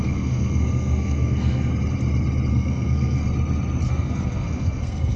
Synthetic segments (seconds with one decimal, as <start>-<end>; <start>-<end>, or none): 0.0-1.7; 2.5-3.2; 3.9-5.2